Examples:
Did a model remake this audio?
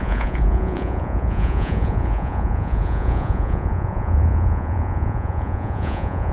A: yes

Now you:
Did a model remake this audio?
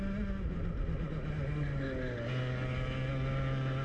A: no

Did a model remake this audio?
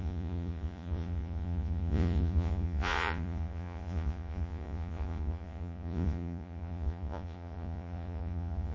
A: yes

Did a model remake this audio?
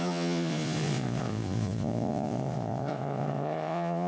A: yes